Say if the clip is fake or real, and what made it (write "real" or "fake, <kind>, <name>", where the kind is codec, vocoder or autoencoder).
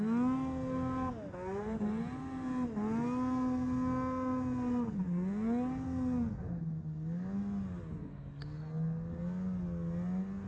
real